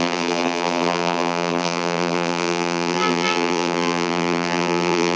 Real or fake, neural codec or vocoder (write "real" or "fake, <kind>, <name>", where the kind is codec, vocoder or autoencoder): fake, vocoder, BigVGAN v2